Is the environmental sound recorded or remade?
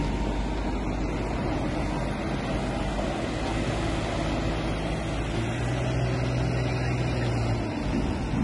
recorded